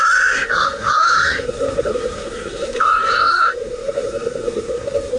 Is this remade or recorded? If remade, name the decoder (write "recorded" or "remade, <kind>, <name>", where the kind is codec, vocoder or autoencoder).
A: remade, codec, SNAC